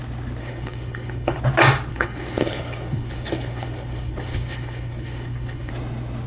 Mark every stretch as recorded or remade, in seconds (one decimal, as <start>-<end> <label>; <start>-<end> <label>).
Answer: 0.0-0.4 recorded; 0.4-1.4 remade; 1.4-1.9 recorded; 1.9-5.7 remade; 5.7-6.3 recorded

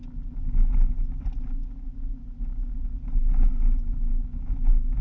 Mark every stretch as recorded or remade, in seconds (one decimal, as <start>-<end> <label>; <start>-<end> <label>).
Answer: 0.0-5.0 recorded

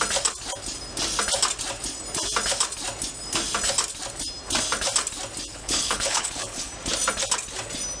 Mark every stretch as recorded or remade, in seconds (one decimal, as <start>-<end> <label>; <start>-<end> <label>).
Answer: 0.0-5.5 recorded; 5.5-6.7 remade; 6.7-8.0 recorded

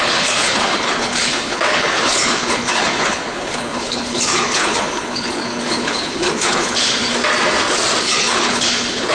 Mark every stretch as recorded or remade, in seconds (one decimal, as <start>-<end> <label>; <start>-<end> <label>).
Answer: 0.0-7.0 remade; 7.0-8.0 recorded; 8.0-9.1 remade

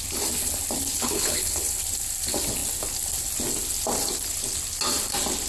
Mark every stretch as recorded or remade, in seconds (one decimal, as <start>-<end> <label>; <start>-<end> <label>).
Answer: 0.0-0.9 recorded; 0.9-1.8 remade; 1.8-5.5 recorded

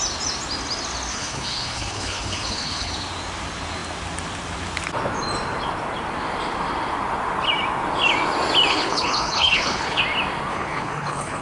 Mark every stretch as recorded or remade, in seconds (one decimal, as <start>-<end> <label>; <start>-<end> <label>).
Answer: 0.0-1.1 recorded; 1.1-2.9 remade; 2.9-8.7 recorded; 8.7-10.0 remade; 10.0-10.5 recorded; 10.5-11.4 remade